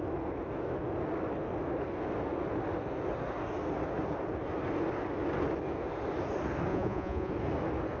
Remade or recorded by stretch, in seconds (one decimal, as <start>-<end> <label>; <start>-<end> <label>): 0.0-6.7 recorded; 6.7-7.3 remade; 7.3-8.0 recorded